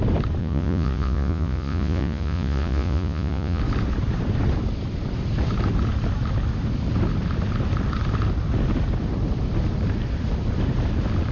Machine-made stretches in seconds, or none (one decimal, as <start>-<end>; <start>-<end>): 0.4-3.6